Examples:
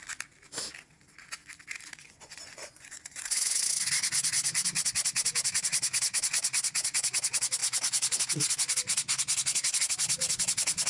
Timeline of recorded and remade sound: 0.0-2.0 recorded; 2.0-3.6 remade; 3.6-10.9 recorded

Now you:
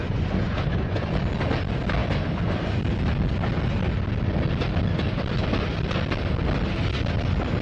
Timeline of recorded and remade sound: 0.0-1.1 remade; 1.1-7.6 recorded

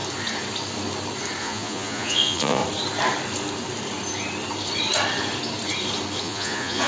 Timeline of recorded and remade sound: 0.0-1.4 recorded; 1.4-2.6 remade; 2.6-6.2 recorded; 6.2-6.9 remade

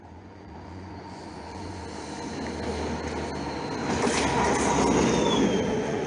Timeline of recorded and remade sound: 0.0-1.8 remade; 1.8-5.5 recorded; 5.5-6.1 remade

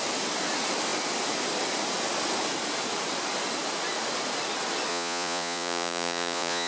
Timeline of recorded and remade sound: 0.0-4.9 recorded; 4.9-6.7 remade